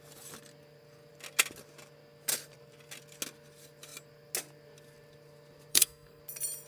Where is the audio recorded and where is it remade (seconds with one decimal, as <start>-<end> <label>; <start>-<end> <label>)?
0.0-5.7 recorded; 5.7-6.2 remade; 6.2-6.7 recorded